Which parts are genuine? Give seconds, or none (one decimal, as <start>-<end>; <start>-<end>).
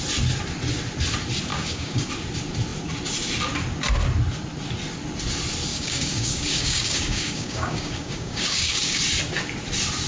0.0-1.5; 2.1-5.7; 9.0-10.1